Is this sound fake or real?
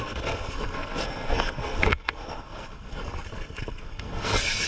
fake